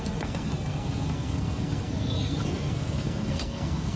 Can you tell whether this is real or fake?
fake